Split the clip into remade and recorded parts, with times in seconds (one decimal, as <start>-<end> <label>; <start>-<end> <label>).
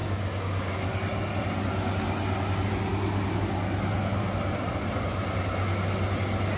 0.0-0.7 remade; 0.7-6.6 recorded